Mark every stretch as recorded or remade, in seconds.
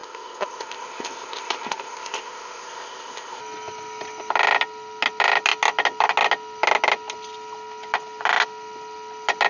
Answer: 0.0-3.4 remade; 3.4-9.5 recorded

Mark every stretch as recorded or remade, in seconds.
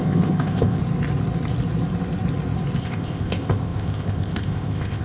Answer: 0.0-0.8 remade; 0.8-2.8 recorded; 2.8-5.0 remade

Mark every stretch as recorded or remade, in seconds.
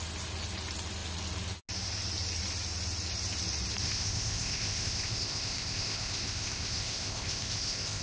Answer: 0.0-3.8 recorded; 3.8-8.0 remade